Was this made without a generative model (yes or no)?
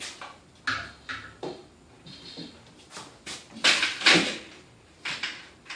yes